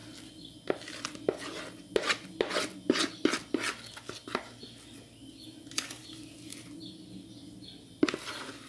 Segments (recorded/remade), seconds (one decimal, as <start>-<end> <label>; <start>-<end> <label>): 0.0-8.7 recorded